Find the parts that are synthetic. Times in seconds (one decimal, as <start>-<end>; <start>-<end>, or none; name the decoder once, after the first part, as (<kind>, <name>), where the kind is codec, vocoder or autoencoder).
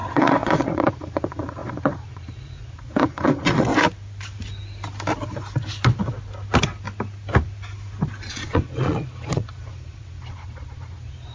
0.0-3.7 (vocoder, Vocos); 8.3-11.3